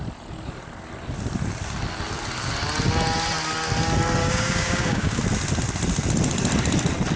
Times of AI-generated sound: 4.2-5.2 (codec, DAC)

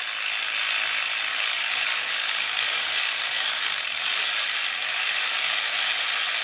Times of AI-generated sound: 1.3-4.2 (codec, DAC); 4.8-5.5